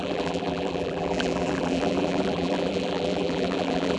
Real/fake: fake